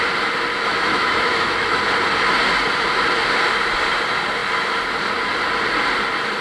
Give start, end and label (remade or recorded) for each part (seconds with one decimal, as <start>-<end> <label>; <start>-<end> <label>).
0.0-0.5 recorded; 0.5-1.8 remade; 1.8-6.4 recorded